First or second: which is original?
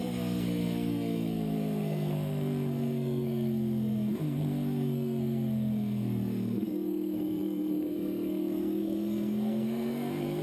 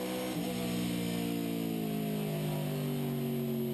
second